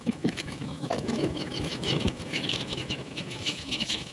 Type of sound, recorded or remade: remade